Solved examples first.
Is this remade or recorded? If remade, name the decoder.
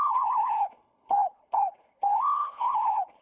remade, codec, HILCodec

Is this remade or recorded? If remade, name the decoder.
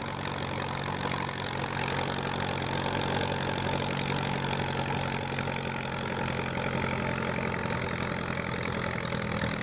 recorded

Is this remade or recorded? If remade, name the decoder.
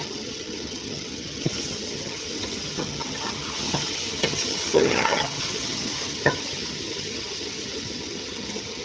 remade, vocoder, HiFi-GAN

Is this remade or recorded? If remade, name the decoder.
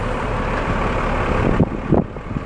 remade, vocoder, BigVGAN v2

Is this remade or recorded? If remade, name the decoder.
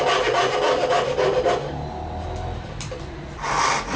recorded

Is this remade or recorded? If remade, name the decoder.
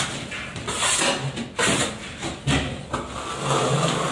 recorded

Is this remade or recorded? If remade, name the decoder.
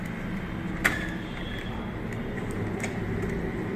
recorded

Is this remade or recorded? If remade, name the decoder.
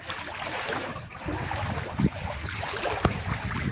remade, vocoder, BigVGAN v2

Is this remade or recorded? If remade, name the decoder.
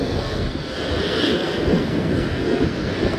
remade, codec, SNAC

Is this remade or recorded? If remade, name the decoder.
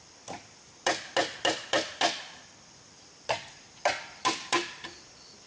remade, vocoder, BigVGAN v2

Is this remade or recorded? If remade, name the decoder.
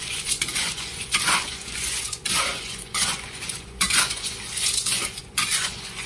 remade, vocoder, Vocos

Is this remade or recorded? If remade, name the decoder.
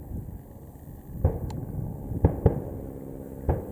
recorded